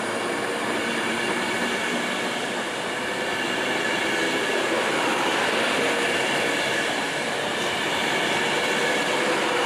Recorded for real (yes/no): yes